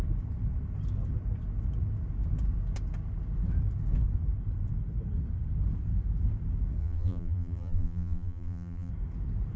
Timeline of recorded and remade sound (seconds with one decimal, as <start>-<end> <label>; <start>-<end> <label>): 0.0-6.8 recorded; 6.8-8.9 remade; 8.9-9.6 recorded